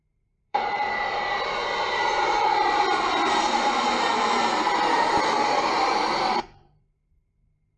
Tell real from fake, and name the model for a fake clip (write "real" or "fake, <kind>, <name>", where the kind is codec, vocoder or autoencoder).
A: fake, vocoder, BigVGAN v2